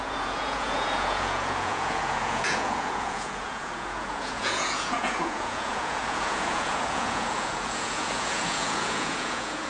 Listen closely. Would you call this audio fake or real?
fake